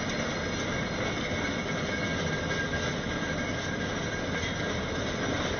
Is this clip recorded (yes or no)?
yes